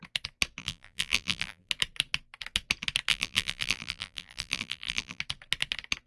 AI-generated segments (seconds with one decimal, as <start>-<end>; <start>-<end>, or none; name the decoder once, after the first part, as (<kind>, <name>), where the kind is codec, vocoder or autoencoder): 0.6-1.7 (vocoder, BigVGAN v2); 3.1-5.2